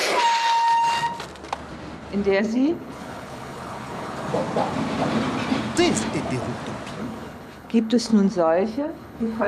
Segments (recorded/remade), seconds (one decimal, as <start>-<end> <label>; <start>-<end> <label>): 0.0-2.4 recorded; 2.4-4.3 remade; 4.3-7.0 recorded; 7.0-8.1 remade; 8.1-8.7 recorded; 8.7-9.5 remade